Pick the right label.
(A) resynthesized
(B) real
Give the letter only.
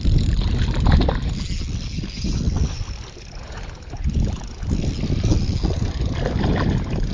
B